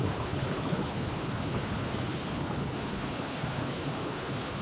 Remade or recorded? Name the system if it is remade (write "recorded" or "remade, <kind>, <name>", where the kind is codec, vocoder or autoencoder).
remade, codec, HILCodec